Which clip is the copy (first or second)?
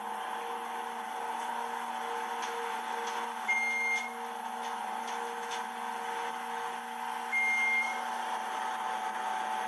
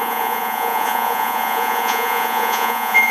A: second